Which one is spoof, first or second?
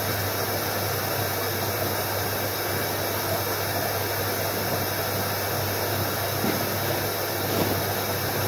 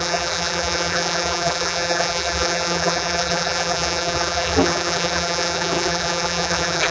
second